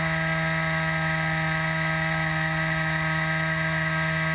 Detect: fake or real real